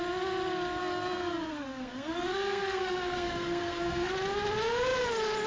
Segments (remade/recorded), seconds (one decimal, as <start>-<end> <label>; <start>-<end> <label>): 0.0-0.8 recorded; 0.8-4.1 remade; 4.1-5.5 recorded